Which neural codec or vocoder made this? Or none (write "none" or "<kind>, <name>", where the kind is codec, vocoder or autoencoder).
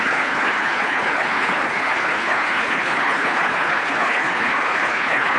codec, HILCodec